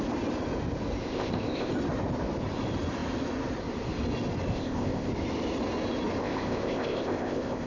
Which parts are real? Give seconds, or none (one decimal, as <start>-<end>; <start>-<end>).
0.0-1.0; 1.7-4.5; 5.1-6.2